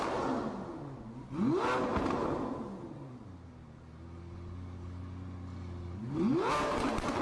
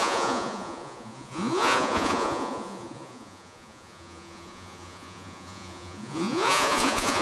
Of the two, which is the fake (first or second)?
second